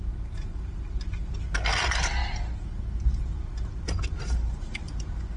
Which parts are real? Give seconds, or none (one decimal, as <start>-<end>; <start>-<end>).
0.0-5.4